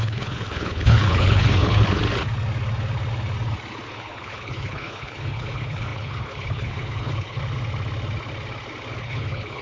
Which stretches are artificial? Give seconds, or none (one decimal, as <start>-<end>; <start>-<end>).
0.0-2.0; 3.9-7.4; 8.9-9.6